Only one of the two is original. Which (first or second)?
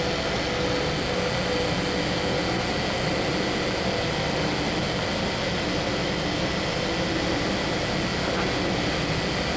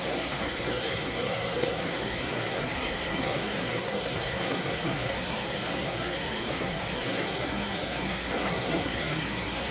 first